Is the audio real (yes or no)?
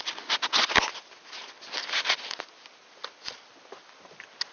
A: yes